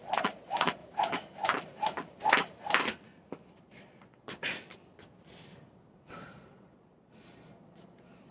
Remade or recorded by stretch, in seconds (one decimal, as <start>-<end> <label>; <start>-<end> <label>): 0.0-0.8 remade; 0.8-3.7 recorded; 3.7-4.8 remade; 4.8-6.1 recorded; 6.1-8.3 remade